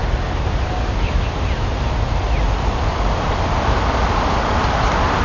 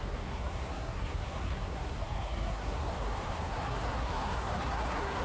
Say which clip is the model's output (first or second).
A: second